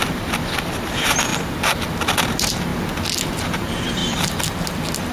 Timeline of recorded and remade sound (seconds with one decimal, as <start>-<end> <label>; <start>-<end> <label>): 0.0-1.3 remade; 1.3-2.2 recorded; 2.2-2.7 remade; 2.7-3.4 recorded; 3.4-4.0 remade; 4.0-5.1 recorded